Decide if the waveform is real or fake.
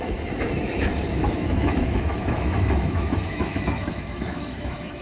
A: fake